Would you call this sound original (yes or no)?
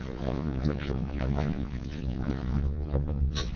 no